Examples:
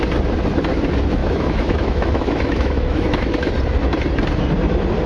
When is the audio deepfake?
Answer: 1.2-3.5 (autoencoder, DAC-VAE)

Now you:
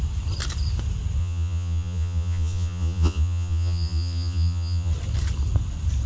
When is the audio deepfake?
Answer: 1.2-4.9 (vocoder, Vocos)

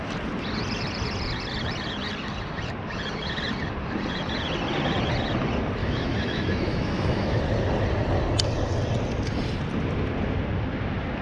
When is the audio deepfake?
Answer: 5.8-7.4 (autoencoder, DAC-VAE)

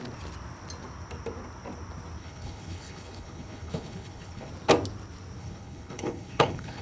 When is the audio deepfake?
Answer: 2.2-4.5 (codec, HILCodec); 5.4-6.8